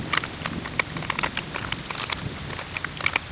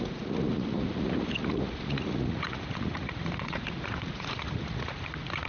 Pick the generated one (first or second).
second